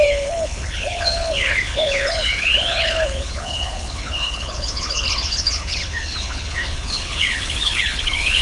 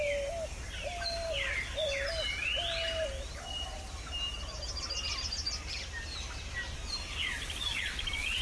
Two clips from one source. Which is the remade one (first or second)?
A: first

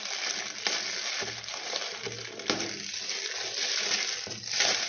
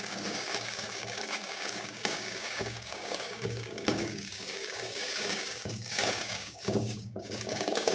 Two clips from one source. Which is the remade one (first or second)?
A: second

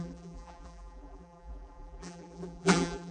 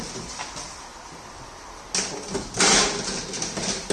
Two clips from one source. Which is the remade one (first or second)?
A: first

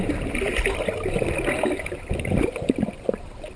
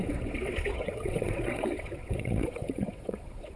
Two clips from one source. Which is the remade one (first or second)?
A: second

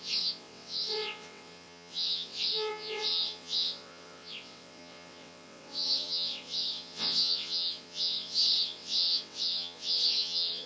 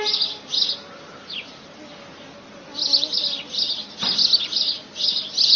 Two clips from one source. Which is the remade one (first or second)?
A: first